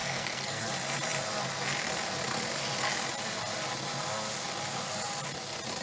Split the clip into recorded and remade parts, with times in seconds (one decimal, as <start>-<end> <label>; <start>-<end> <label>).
0.0-0.6 remade; 0.6-5.8 recorded